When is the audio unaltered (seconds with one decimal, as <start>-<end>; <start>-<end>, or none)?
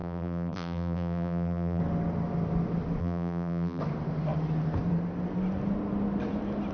1.8-3.0; 3.8-6.7